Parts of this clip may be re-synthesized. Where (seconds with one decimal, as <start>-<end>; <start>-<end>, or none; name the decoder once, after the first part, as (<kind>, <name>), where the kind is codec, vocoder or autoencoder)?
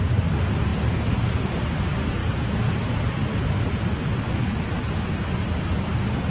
none